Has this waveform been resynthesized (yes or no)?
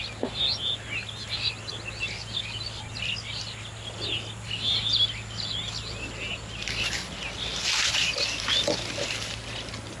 no